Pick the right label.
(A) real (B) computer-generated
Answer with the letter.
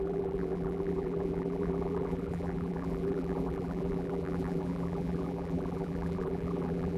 B